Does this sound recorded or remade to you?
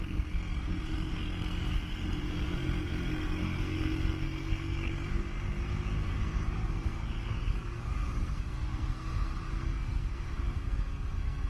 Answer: remade